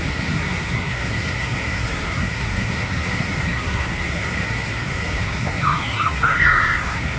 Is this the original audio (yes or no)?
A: no